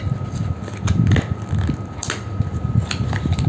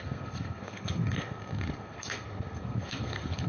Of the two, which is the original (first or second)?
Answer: first